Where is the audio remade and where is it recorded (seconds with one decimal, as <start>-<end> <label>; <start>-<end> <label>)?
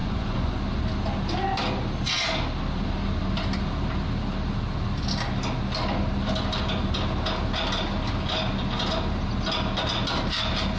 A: 0.0-0.6 remade; 0.6-10.8 recorded